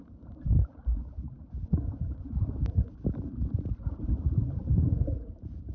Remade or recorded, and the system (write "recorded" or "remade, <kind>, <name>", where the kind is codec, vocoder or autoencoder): remade, vocoder, BigVGAN v2